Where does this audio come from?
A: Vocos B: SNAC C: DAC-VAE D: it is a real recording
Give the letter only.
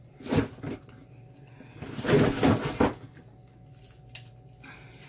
D